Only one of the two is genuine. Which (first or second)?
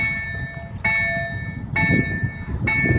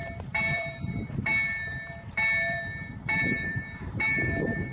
first